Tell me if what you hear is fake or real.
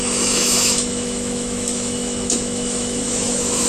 fake